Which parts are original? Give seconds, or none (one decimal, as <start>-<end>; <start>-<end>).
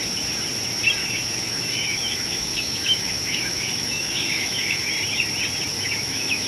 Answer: 0.0-1.0; 4.9-5.7